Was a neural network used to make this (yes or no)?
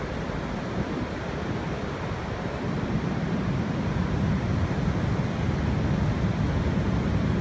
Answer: no